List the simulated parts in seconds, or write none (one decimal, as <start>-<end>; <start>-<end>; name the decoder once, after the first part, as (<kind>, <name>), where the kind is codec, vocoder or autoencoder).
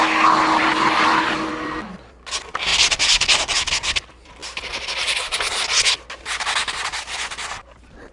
none